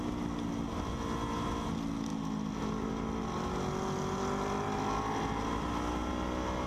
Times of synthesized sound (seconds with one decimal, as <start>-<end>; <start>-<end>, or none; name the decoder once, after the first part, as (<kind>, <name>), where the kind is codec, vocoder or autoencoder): none